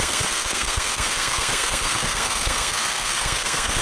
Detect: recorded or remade remade